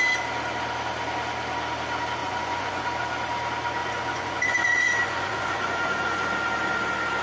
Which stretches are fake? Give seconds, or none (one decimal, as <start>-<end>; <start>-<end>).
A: 2.2-2.9; 3.8-6.3